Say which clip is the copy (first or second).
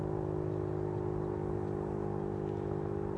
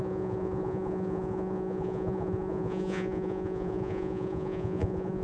second